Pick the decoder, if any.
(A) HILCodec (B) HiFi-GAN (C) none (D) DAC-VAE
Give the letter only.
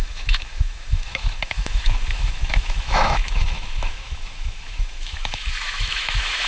D